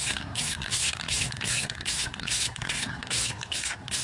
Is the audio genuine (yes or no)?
no